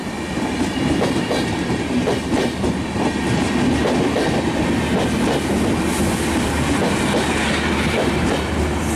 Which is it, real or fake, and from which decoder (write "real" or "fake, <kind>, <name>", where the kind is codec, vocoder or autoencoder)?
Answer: real